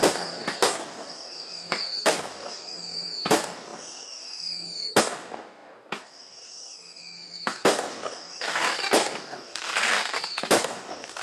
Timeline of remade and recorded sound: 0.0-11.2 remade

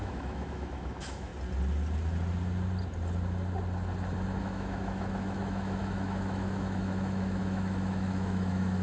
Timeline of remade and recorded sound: 0.0-1.3 remade; 1.3-4.4 recorded; 4.4-8.8 remade